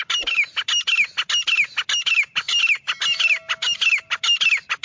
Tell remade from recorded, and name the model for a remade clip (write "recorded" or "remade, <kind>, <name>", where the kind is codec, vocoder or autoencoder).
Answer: recorded